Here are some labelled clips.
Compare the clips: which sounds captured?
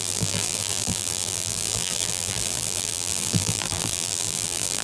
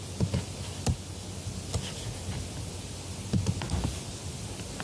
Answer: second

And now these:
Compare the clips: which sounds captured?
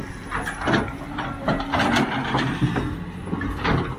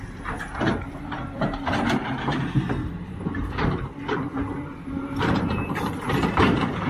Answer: first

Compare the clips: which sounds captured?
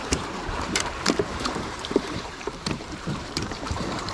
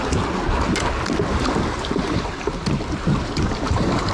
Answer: second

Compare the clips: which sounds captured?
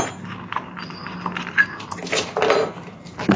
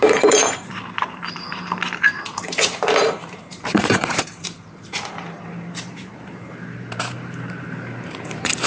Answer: first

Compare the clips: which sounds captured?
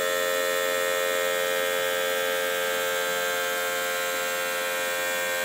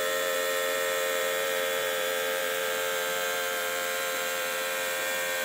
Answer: first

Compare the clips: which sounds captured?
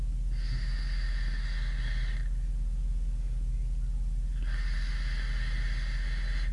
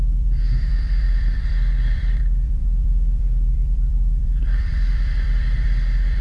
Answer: first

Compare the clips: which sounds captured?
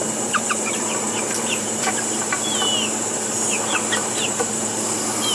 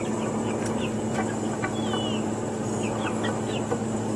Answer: second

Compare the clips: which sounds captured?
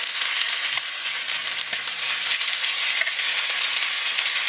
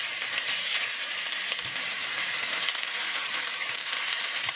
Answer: first